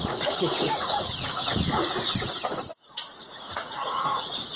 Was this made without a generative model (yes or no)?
no